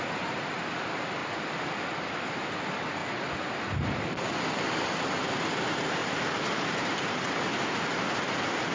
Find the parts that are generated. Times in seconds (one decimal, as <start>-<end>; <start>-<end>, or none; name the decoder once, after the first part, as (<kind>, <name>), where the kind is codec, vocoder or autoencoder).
6.0-7.0 (vocoder, BigVGAN v2)